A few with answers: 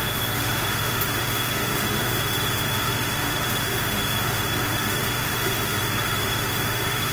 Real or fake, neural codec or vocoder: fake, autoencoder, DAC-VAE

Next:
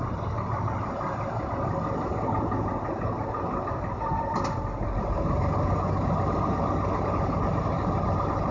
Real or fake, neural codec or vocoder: real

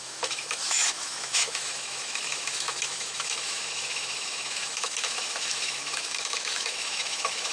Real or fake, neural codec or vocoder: fake, autoencoder, DAC-VAE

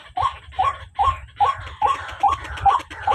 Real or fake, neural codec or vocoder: real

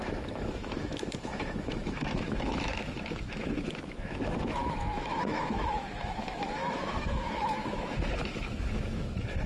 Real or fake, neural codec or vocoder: fake, autoencoder, DAC-VAE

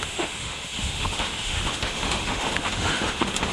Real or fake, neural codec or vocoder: fake, autoencoder, DAC-VAE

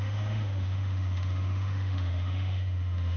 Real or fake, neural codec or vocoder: fake, autoencoder, DAC-VAE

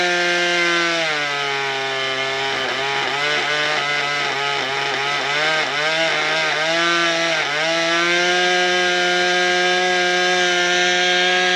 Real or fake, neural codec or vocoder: real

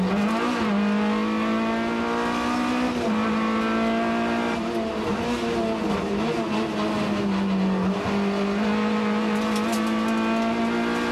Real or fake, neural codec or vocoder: real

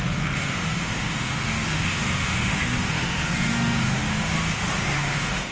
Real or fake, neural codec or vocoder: fake, autoencoder, DAC-VAE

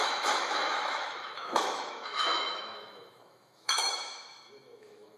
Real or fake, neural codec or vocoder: fake, autoencoder, DAC-VAE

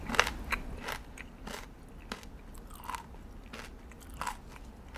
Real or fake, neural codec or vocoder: real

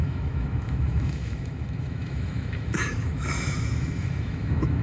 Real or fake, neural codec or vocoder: fake, autoencoder, DAC-VAE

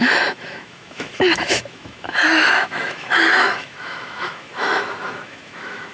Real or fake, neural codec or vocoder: fake, autoencoder, DAC-VAE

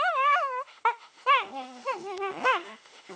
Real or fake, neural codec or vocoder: fake, autoencoder, DAC-VAE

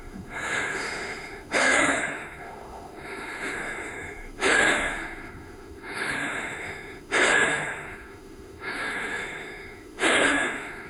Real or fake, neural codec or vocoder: fake, autoencoder, DAC-VAE